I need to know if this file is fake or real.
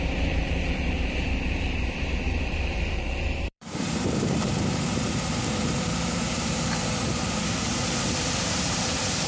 fake